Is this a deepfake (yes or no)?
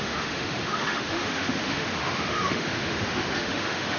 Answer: yes